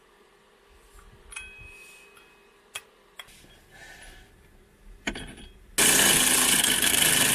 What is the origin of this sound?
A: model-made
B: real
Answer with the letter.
B